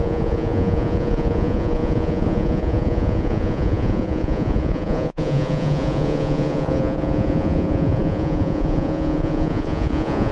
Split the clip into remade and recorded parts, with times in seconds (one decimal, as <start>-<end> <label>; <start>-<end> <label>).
0.0-10.3 remade